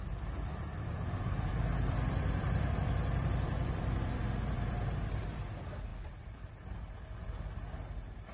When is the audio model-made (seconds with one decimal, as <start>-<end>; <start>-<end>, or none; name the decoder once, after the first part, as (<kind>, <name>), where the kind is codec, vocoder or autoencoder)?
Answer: 1.2-5.5 (vocoder, BigVGAN v2); 5.9-6.7